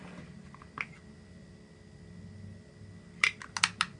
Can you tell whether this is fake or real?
real